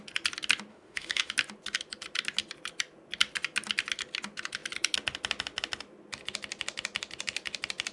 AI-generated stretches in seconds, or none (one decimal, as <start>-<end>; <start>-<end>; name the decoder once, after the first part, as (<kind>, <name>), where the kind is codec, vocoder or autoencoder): 0.7-1.3 (autoencoder, DAC-VAE)

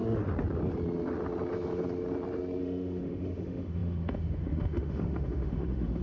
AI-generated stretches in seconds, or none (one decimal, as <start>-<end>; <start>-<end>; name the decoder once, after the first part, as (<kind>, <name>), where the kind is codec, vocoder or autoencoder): 2.6-6.0 (autoencoder, DAC-VAE)

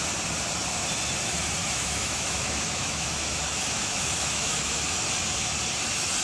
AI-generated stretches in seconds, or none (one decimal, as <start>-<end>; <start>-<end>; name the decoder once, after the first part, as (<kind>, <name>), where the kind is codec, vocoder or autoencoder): 1.6-5.0 (autoencoder, DAC-VAE)

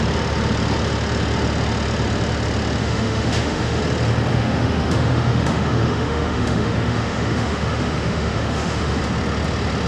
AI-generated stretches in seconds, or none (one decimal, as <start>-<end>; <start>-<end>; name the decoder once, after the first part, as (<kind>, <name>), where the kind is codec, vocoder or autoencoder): 2.8-3.8 (autoencoder, DAC-VAE); 4.3-9.0

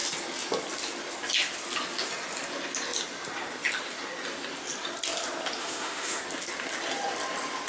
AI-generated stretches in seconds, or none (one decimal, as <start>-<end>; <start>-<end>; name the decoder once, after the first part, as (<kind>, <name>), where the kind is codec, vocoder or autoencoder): 5.6-6.2 (autoencoder, DAC-VAE)

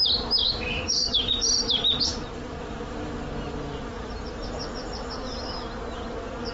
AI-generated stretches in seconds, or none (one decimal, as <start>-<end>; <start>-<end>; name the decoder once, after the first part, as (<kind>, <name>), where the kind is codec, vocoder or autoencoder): 0.4-1.3 (autoencoder, DAC-VAE)

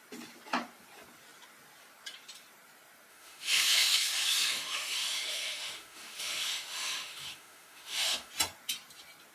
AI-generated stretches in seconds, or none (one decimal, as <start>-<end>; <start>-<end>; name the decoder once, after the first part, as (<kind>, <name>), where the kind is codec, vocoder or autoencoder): 3.1-8.3 (autoencoder, DAC-VAE)